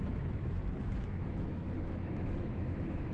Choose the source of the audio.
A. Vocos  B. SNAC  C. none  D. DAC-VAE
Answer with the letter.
D